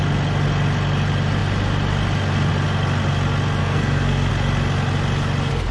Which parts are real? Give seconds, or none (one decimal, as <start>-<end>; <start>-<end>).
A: 0.0-3.6; 4.3-5.7